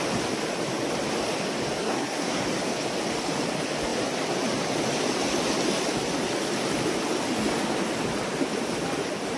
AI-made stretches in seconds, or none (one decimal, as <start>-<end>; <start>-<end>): 1.8-2.4